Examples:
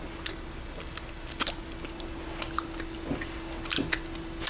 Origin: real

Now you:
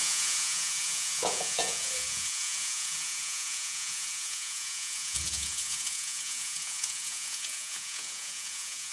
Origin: fake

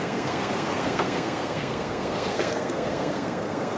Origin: fake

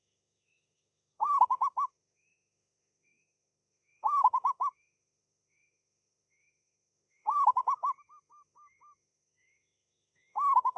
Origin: fake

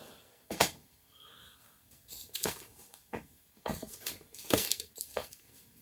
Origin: fake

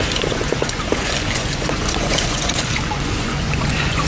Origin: fake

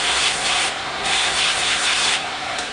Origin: fake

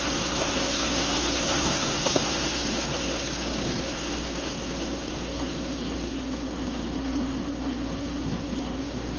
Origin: fake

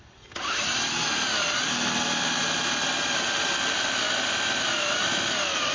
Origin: real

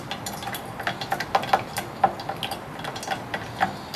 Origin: real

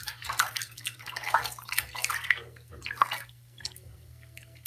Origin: fake